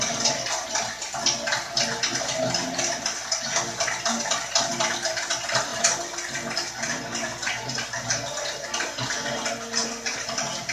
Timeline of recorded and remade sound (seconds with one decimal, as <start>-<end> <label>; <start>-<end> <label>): 0.0-10.7 recorded